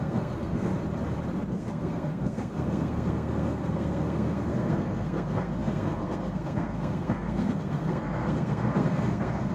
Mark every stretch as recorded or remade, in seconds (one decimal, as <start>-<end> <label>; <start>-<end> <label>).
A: 0.0-0.7 remade; 0.7-1.5 recorded; 1.5-9.5 remade